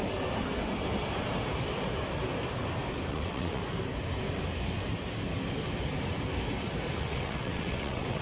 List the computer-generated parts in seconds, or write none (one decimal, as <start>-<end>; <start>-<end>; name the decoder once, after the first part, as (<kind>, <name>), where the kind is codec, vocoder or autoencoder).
3.1-3.6 (vocoder, WaveNeXt); 7.0-8.2